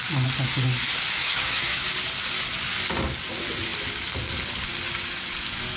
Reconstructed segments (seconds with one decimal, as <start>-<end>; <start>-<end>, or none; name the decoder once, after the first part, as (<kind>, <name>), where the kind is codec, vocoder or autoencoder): 1.2-1.9 (autoencoder, DAC-VAE)